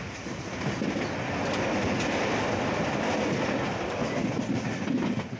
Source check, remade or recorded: recorded